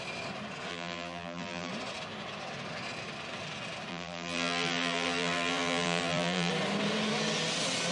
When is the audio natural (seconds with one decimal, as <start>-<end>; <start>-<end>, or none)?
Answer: 0.0-0.7; 1.7-3.9; 6.5-7.9